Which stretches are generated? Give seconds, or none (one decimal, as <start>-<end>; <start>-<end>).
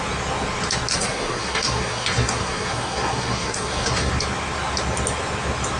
0.9-4.1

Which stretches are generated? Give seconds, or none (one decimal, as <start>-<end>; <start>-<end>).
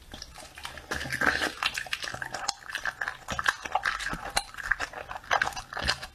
none